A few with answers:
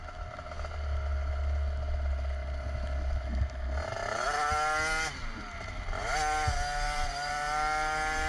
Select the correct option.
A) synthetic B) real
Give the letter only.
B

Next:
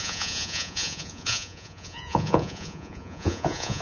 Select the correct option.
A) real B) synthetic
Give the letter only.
B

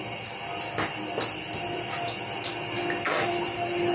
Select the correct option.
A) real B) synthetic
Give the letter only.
A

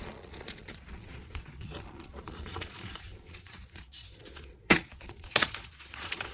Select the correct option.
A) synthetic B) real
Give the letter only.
A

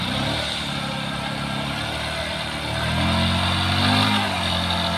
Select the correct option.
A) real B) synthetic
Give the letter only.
A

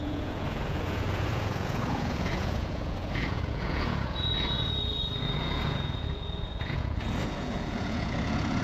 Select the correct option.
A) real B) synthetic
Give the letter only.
B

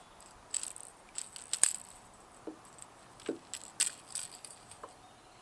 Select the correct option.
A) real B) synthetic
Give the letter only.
A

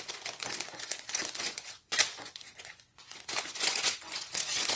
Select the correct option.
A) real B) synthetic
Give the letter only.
B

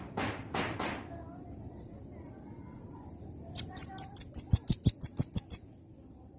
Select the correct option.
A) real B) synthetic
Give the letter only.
A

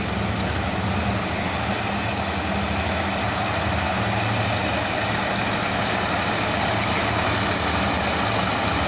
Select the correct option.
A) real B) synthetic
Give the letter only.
A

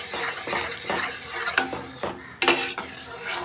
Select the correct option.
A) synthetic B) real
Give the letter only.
B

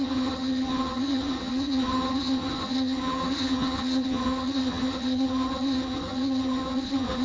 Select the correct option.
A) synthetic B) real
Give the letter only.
A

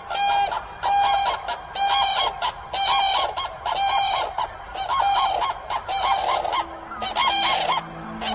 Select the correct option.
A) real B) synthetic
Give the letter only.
A